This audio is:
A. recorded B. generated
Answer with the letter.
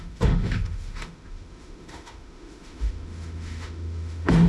B